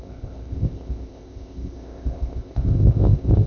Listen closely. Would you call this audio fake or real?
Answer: fake